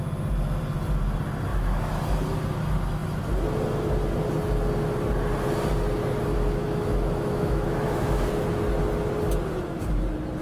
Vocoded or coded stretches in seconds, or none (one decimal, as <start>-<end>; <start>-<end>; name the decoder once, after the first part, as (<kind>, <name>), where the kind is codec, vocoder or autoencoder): 1.5-2.0 (autoencoder, DAC-VAE); 6.3-8.3